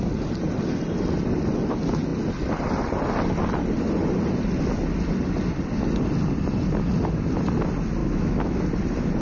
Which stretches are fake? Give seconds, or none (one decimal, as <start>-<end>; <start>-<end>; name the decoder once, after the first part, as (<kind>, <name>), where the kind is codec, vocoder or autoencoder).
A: 8.0-8.6 (autoencoder, DAC-VAE)